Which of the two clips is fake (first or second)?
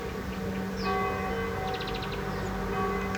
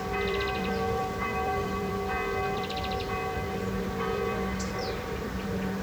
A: second